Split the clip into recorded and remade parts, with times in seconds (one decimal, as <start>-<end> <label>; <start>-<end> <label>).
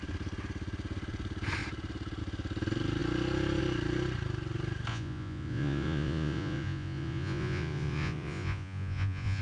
0.0-4.9 recorded; 4.9-9.4 remade